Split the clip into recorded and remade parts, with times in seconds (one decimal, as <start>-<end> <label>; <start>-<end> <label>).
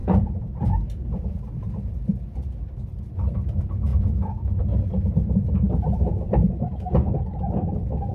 0.0-0.6 remade; 0.6-8.1 recorded